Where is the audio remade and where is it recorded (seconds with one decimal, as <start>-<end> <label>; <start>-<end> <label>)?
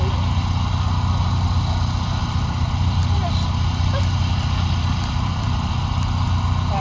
0.0-2.2 recorded; 2.2-5.7 remade; 5.7-6.8 recorded